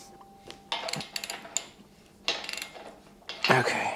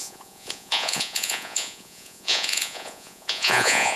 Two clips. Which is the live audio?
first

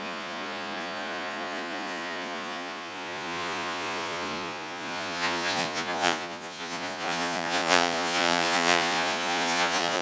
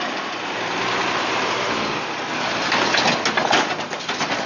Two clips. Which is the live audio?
second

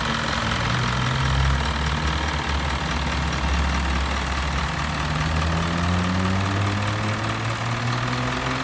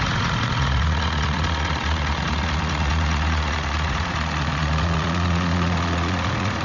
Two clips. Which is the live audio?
first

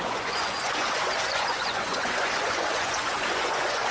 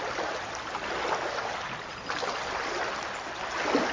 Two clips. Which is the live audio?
second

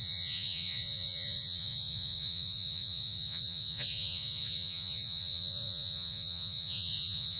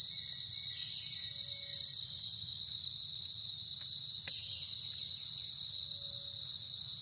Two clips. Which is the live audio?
second